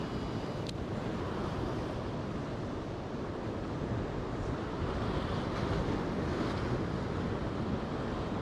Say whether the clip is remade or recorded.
recorded